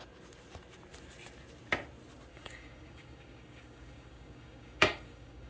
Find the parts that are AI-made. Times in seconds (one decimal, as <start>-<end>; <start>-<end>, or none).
2.3-5.5